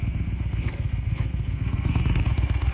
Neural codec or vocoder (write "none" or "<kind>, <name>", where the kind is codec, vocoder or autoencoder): codec, SNAC